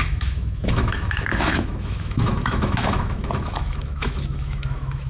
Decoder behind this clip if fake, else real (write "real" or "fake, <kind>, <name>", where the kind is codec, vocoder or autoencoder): fake, autoencoder, DAC-VAE